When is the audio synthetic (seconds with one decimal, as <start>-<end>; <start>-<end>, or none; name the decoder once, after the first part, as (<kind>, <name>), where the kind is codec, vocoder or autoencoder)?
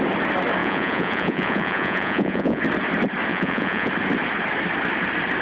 0.6-2.6 (vocoder, Vocos); 3.3-3.9